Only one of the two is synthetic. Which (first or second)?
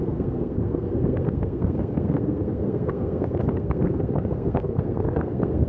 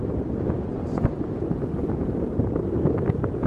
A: first